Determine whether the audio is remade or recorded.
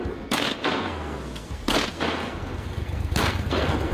remade